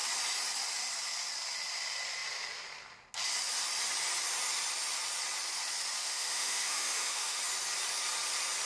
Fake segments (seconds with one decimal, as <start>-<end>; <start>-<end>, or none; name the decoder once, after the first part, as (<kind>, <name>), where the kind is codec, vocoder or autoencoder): 6.0-7.4 (autoencoder, DAC-VAE)